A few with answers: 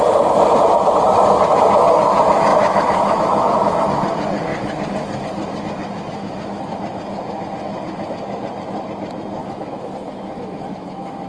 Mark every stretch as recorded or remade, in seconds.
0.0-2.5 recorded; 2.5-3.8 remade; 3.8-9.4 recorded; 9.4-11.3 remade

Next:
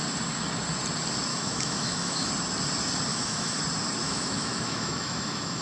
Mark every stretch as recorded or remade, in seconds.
0.0-1.3 recorded; 1.3-2.3 remade; 2.3-3.1 recorded; 3.1-3.6 remade; 3.6-4.0 recorded; 4.0-5.6 remade

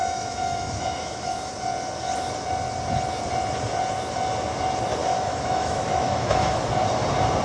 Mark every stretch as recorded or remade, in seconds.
0.0-1.5 remade; 1.5-5.0 recorded; 5.0-6.6 remade; 6.6-7.4 recorded

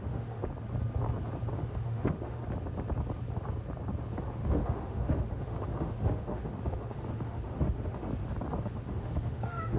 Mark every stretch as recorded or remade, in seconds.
0.0-0.4 remade; 0.4-1.5 recorded; 1.5-2.4 remade; 2.4-4.3 recorded; 4.3-8.1 remade; 8.1-8.6 recorded; 8.6-9.8 remade

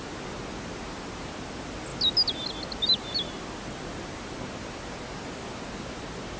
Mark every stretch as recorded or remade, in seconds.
0.0-6.4 recorded

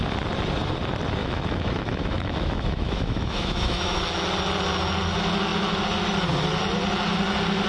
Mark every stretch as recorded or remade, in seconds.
0.0-1.2 recorded; 1.2-4.0 remade; 4.0-7.7 recorded